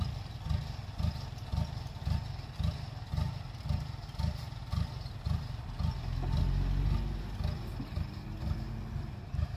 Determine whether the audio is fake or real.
real